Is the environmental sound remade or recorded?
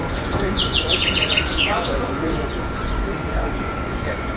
remade